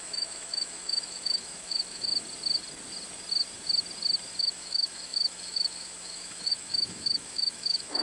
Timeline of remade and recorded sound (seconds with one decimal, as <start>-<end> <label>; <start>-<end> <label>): 0.0-2.1 remade; 2.1-4.4 recorded; 4.4-8.0 remade